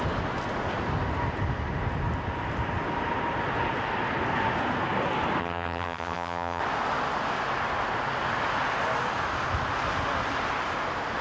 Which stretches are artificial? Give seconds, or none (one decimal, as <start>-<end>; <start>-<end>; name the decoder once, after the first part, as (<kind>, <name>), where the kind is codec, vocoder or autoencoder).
5.4-6.6 (vocoder, HiFi-GAN)